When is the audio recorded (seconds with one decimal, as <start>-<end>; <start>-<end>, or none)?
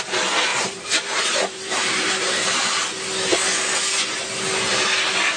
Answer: 0.0-0.5; 2.8-5.4